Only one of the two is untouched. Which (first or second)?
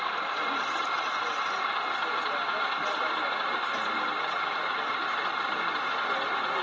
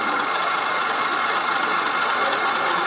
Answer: first